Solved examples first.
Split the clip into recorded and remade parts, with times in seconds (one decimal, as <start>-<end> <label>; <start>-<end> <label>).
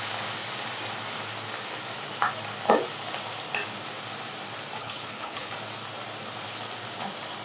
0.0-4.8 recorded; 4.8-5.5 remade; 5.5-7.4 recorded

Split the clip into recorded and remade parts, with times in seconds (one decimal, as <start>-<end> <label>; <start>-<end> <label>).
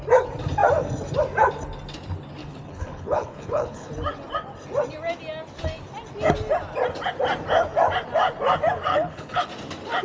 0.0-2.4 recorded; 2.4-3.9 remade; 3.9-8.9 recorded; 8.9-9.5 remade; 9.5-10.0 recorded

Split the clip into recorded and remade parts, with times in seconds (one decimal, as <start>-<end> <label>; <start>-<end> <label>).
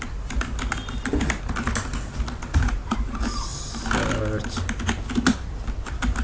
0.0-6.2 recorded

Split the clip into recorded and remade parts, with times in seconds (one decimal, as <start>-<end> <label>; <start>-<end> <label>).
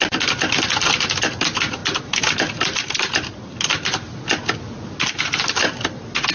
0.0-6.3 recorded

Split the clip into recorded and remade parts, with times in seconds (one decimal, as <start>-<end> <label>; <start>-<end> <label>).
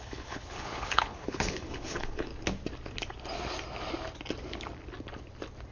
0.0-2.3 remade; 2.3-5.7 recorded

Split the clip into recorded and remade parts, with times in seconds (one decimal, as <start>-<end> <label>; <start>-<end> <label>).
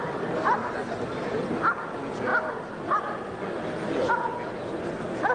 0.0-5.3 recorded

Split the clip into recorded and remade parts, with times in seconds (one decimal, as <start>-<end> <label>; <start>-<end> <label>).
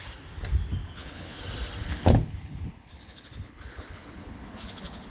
0.0-0.8 recorded; 0.8-1.4 remade; 1.4-1.8 recorded; 1.8-5.1 remade